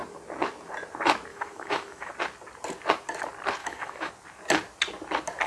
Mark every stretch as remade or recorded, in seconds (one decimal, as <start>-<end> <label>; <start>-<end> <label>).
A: 0.0-1.3 recorded; 1.3-2.1 remade; 2.1-3.6 recorded; 3.6-4.1 remade; 4.1-5.5 recorded